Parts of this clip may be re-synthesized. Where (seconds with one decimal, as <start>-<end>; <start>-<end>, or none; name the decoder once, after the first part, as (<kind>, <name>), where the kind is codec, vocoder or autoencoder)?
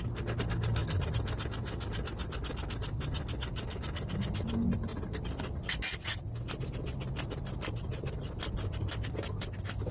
none